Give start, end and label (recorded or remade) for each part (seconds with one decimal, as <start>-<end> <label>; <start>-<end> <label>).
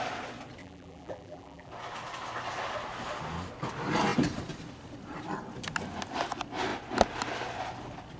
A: 0.0-0.6 recorded; 0.6-1.7 remade; 1.7-8.2 recorded